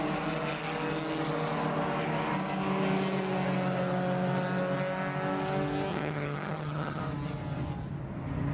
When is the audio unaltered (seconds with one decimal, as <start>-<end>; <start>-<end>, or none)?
0.0-5.9; 7.0-8.5